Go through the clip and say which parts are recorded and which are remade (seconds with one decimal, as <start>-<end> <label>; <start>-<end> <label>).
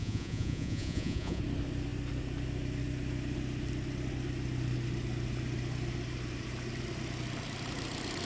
0.0-1.4 remade; 1.4-8.3 recorded